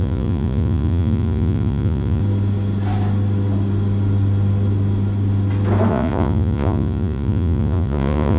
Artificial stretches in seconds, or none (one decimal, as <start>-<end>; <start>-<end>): 0.0-2.2; 5.9-8.4